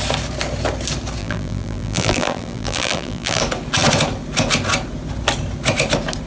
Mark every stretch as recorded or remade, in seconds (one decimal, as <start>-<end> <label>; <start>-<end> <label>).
0.0-1.2 recorded; 1.2-3.4 remade; 3.4-6.3 recorded